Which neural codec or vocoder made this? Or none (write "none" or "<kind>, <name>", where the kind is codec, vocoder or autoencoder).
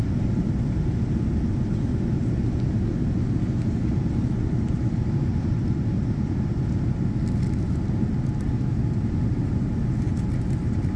none